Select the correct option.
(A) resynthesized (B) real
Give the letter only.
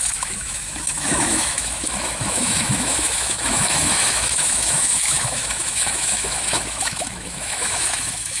A